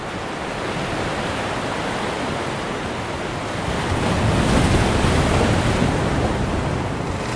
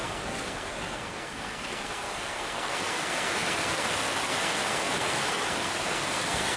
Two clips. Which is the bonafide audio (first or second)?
first